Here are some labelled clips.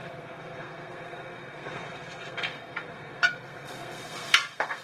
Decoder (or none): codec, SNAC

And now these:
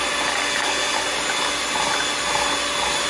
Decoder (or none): none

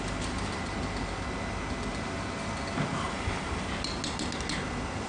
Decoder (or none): none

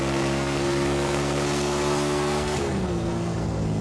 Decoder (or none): codec, SNAC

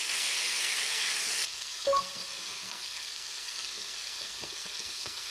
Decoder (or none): codec, SNAC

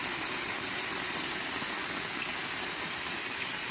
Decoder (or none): none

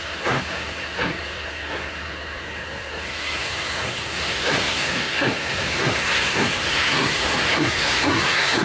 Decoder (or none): codec, SNAC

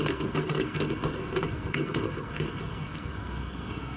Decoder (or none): codec, SNAC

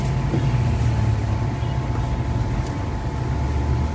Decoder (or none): none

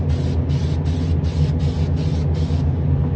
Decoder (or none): none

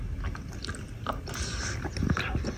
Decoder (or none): none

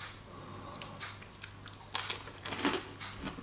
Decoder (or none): none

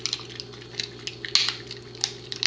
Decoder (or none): none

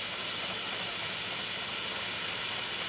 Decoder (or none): none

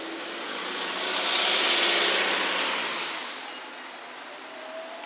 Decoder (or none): none